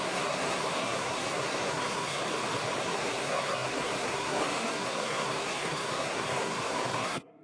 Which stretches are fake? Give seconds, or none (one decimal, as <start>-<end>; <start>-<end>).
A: 0.0-2.2; 2.8-7.4